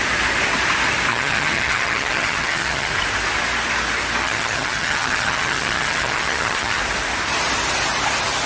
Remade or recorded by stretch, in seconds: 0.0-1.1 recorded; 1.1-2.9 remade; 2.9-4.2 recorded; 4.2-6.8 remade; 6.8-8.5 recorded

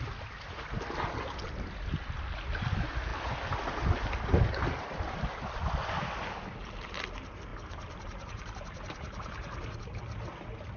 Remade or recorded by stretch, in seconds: 0.0-7.5 recorded; 7.5-9.8 remade; 9.8-10.8 recorded

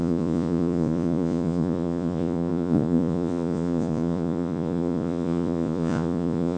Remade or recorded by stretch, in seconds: 0.0-6.6 remade

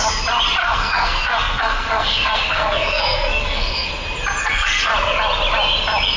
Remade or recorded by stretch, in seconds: 0.0-0.6 recorded; 0.6-3.9 remade; 3.9-4.4 recorded; 4.4-4.9 remade; 4.9-6.2 recorded

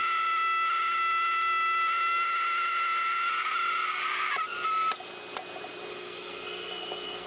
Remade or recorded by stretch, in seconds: 0.0-5.9 recorded; 5.9-7.3 remade

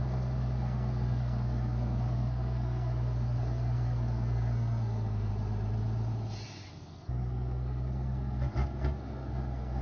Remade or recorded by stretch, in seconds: 0.0-5.3 remade; 5.3-6.7 recorded; 6.7-9.8 remade

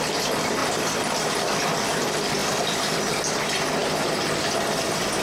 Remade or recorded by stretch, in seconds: 0.0-2.4 recorded; 2.4-3.1 remade; 3.1-5.2 recorded

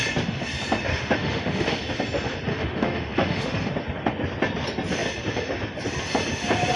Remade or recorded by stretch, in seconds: 0.0-0.9 recorded; 0.9-1.8 remade; 1.8-2.5 recorded; 2.5-3.7 remade; 3.7-6.8 recorded